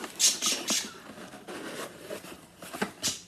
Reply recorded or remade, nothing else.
recorded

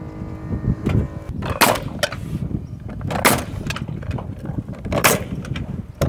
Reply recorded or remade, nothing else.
recorded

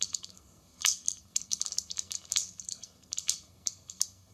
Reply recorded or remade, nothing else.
remade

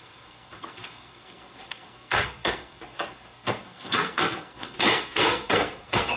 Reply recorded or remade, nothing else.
remade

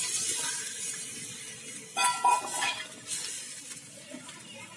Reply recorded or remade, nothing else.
recorded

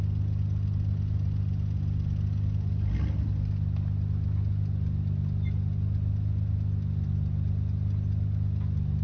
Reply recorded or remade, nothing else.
recorded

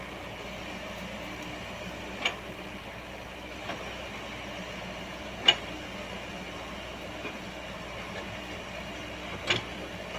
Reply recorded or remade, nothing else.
recorded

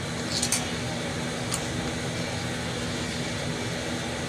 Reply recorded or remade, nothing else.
recorded